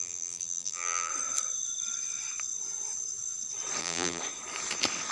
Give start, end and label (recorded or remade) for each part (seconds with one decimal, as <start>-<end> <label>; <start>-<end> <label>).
0.0-1.1 remade; 1.1-3.8 recorded; 3.8-4.2 remade; 4.2-5.1 recorded